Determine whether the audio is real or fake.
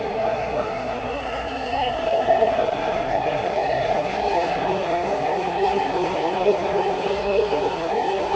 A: fake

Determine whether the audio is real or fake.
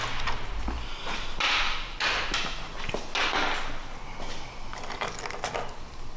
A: real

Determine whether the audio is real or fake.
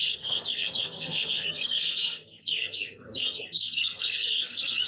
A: fake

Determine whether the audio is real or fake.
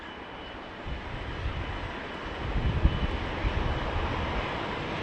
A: real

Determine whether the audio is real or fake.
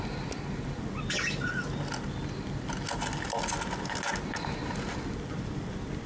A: real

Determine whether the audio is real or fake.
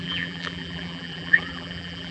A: fake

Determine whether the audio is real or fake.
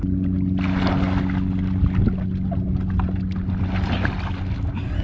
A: real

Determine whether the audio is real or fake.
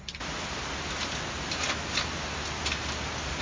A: real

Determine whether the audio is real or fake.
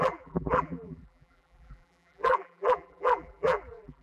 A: fake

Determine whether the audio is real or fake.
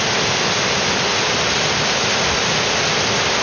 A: real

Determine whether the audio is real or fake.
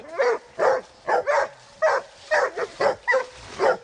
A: real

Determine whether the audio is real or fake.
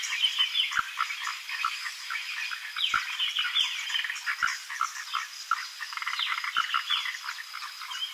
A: real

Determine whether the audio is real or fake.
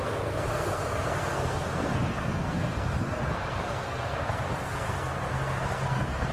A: fake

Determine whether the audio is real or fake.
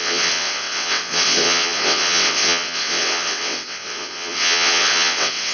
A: fake